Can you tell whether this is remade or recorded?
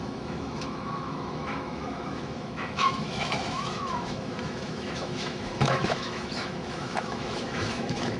remade